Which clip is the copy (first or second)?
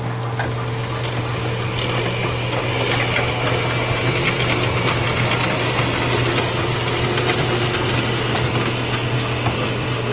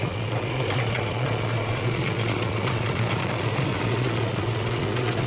second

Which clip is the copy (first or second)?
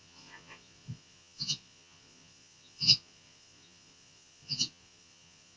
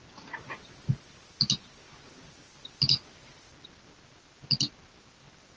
first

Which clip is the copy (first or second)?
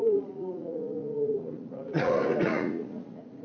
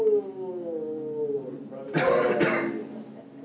first